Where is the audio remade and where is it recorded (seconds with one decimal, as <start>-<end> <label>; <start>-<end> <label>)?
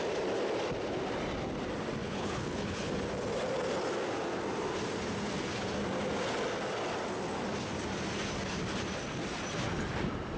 0.0-2.0 recorded; 2.0-2.9 remade; 2.9-10.4 recorded